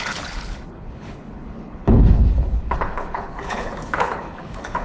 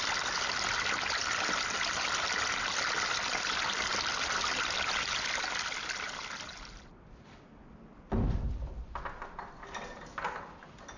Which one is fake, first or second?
first